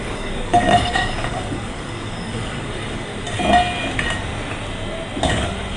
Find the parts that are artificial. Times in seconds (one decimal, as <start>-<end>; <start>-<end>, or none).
0.0-3.1; 5.2-5.8